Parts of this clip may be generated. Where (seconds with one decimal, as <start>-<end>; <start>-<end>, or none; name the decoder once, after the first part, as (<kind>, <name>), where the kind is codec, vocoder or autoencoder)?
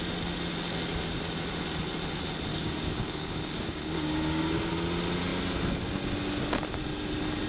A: 2.5-4.7 (codec, DAC)